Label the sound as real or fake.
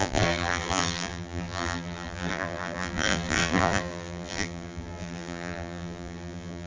fake